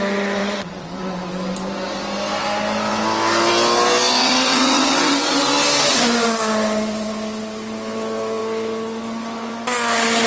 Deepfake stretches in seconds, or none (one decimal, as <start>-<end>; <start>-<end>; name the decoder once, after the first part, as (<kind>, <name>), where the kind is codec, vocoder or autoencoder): 0.4-1.0 (vocoder, WaveNeXt); 4.2-5.5